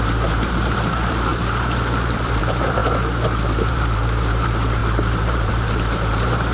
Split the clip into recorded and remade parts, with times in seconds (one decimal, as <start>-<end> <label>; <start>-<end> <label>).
0.0-2.8 remade; 2.8-3.7 recorded; 3.7-6.5 remade